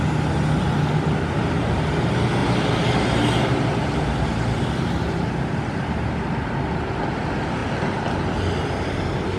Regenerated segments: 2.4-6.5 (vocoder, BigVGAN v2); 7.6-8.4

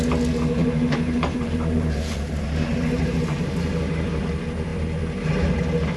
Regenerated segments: 0.6-4.2 (vocoder, BigVGAN v2); 4.7-5.6

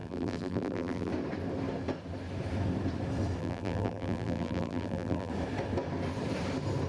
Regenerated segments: 0.0-1.1 (vocoder, BigVGAN v2); 3.4-5.3

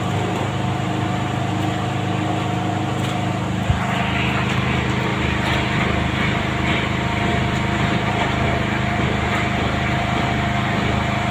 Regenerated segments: none